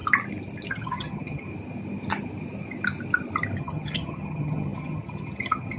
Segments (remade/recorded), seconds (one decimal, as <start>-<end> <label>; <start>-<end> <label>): 0.0-0.7 recorded; 0.7-1.5 remade; 1.5-3.6 recorded; 3.6-5.8 remade